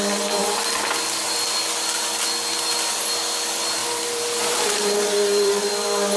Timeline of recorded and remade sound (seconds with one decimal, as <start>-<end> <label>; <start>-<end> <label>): 0.0-3.8 recorded; 3.8-5.6 remade; 5.6-6.2 recorded